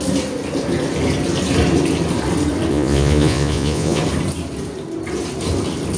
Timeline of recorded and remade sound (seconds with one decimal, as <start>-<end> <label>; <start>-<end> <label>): 0.0-2.7 recorded; 2.7-4.0 remade; 4.0-6.0 recorded